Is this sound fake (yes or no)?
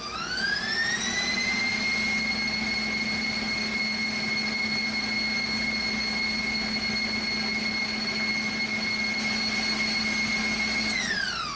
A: no